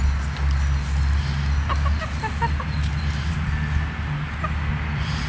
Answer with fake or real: real